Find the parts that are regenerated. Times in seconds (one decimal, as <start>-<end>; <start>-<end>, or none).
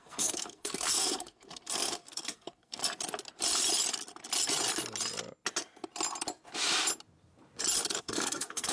0.0-2.8; 8.0-8.7